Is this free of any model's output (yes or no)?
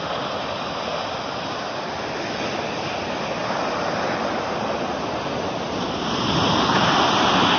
yes